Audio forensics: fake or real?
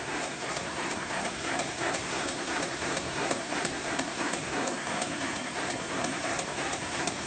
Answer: fake